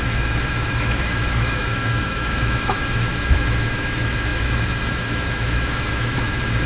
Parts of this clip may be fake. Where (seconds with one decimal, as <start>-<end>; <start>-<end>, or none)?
0.0-6.7